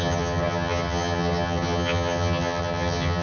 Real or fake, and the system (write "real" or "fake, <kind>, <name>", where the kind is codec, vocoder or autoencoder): fake, vocoder, HiFi-GAN